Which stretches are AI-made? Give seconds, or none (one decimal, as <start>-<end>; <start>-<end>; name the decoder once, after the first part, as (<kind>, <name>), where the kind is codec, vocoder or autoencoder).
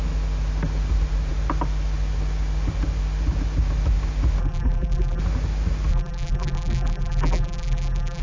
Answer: 4.4-5.2 (vocoder, BigVGAN v2); 5.9-8.2